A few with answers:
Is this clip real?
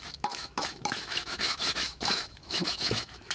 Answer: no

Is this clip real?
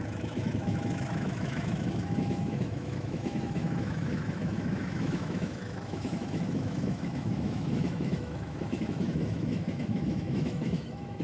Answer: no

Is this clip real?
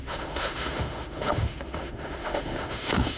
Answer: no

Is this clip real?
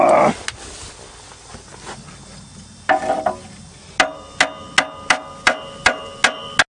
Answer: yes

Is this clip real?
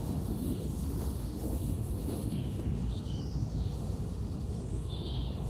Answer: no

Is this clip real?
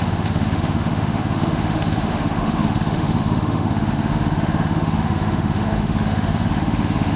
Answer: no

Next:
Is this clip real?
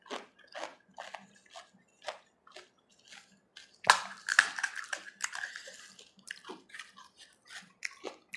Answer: yes